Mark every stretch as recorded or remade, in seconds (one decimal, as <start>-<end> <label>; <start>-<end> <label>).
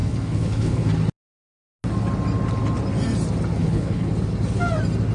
0.0-0.9 remade; 0.9-3.6 recorded; 3.6-4.1 remade; 4.1-5.1 recorded